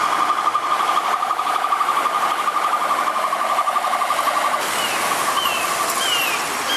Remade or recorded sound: recorded